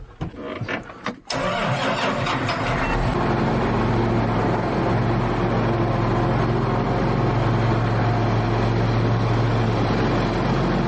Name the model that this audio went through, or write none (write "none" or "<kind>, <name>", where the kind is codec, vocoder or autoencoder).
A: none